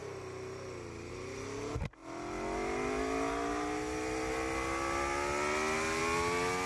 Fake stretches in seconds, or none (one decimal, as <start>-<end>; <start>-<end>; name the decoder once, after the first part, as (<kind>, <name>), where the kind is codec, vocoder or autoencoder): none

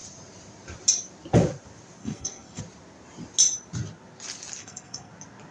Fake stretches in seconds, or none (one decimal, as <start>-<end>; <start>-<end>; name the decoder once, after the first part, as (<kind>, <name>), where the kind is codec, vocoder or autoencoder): 2.0-2.6 (codec, SNAC); 4.6-5.1

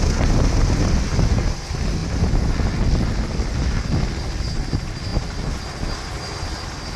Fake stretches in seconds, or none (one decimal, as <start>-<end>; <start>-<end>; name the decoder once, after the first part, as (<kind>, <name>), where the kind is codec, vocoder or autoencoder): none

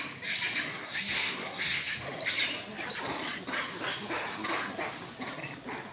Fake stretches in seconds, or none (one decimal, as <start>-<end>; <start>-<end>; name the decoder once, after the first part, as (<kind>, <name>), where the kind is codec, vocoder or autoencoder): 0.7-1.9 (codec, SNAC)

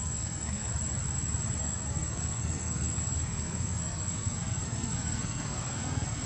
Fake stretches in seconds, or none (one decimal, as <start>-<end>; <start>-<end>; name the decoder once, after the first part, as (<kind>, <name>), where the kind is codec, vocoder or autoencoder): 0.0-0.7 (codec, SNAC); 1.6-6.3

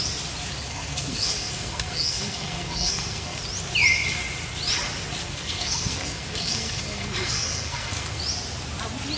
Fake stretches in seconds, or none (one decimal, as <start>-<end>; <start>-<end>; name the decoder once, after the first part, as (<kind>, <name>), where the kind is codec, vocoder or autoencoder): 0.7-3.4 (codec, SNAC); 5.2-8.2